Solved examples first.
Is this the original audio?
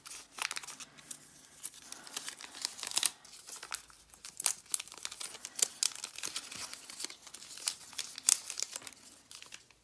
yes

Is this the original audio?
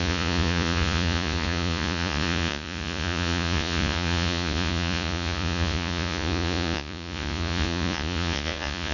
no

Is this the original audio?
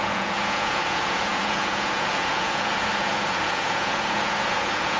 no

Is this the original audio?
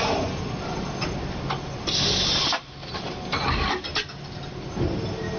yes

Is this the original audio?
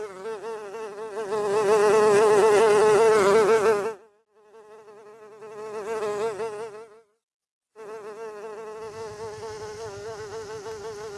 yes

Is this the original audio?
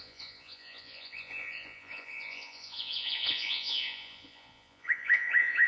no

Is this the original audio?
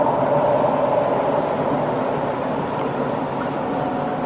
yes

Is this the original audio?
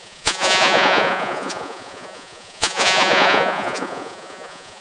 no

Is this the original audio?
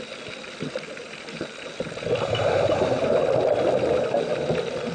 yes